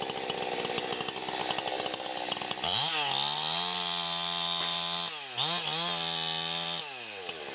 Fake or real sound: real